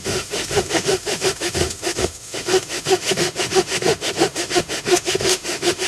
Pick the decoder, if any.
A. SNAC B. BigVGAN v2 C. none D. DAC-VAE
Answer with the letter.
D